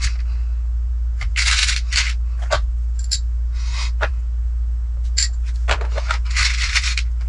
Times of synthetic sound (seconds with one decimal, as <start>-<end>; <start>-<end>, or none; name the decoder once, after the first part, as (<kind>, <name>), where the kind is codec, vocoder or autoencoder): none